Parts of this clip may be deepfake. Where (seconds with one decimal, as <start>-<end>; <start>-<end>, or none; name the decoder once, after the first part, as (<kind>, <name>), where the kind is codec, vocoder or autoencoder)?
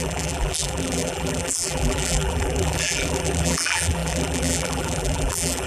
0.0-5.7 (vocoder, BigVGAN v2)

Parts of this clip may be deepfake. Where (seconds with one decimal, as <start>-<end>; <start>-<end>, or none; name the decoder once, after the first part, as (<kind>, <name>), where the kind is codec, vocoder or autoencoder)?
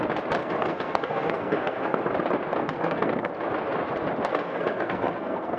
0.4-2.0 (codec, SNAC); 2.6-3.3; 4.3-5.6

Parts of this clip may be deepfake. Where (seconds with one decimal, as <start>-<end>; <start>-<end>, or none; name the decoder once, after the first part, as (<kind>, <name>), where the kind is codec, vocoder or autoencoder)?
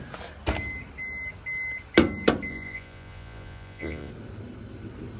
2.5-4.1 (vocoder, Vocos)